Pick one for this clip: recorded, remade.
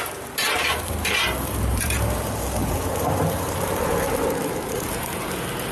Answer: remade